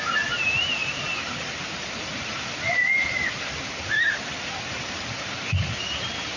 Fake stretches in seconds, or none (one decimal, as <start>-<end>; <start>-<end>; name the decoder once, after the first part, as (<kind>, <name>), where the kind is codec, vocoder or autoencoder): none